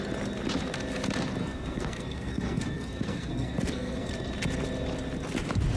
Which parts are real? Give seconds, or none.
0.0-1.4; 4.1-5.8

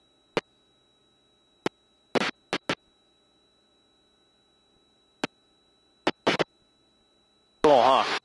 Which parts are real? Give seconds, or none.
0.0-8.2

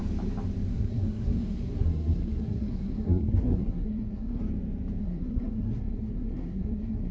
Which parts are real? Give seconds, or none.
0.0-0.7; 4.4-5.0

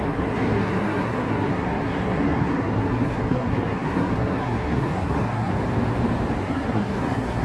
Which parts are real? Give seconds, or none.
5.6-6.4

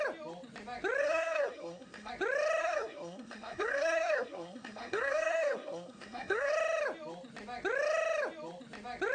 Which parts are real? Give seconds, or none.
0.0-1.0; 2.1-2.6; 6.5-9.1

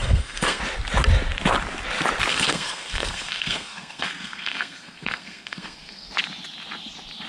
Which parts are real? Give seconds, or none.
0.6-2.3; 6.1-7.3